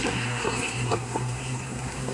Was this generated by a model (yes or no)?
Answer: yes